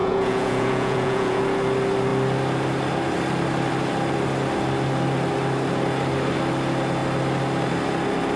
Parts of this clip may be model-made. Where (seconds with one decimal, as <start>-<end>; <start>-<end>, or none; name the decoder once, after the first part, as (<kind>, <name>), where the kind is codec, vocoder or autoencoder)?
0.0-1.4 (vocoder, Vocos)